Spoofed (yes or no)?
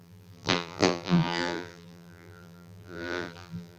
yes